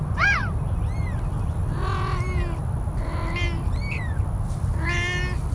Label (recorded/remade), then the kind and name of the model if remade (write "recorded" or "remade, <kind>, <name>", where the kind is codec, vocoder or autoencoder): recorded